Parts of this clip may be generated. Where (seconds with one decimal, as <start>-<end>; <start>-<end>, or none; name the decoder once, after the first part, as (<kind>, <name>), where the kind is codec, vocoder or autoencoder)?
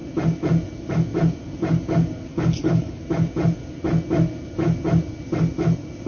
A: 2.3-3.0 (codec, HILCodec)